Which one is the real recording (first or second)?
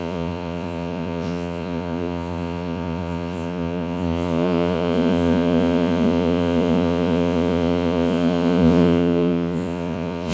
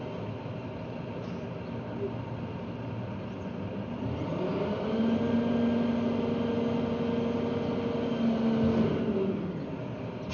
second